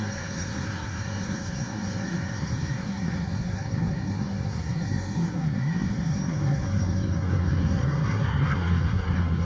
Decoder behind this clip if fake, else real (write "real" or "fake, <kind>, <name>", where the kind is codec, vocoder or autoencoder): fake, codec, SNAC